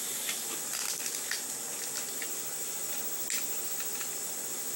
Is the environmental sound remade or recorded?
recorded